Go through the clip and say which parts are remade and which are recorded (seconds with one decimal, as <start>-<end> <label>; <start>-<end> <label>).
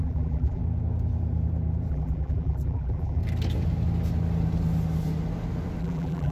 0.0-0.6 remade; 0.6-1.9 recorded; 1.9-3.2 remade; 3.2-5.8 recorded; 5.8-6.3 remade